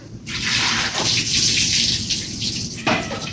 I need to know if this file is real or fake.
real